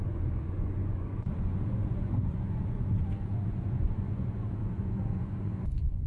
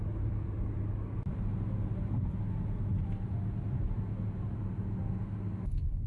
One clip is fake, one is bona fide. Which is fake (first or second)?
first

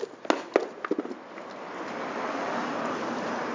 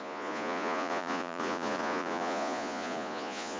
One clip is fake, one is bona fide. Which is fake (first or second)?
second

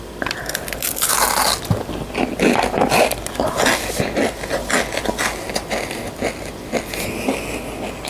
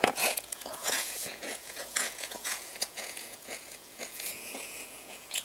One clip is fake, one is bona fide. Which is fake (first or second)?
second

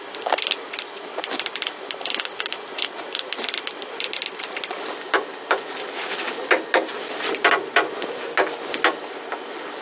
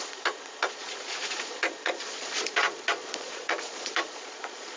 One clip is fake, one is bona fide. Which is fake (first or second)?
second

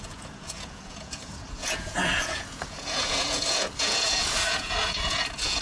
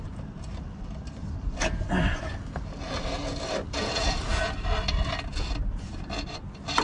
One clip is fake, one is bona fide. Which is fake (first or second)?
first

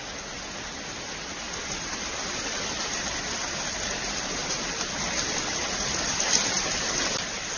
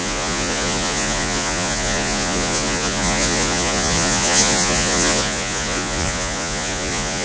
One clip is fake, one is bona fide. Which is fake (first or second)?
second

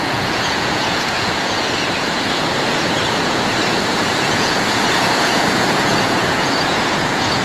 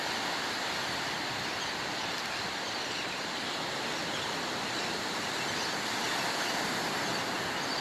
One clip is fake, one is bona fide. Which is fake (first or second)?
first